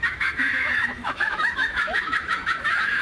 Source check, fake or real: fake